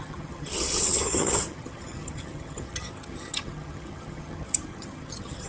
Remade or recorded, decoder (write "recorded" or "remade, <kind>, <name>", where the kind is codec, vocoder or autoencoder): remade, vocoder, HiFi-GAN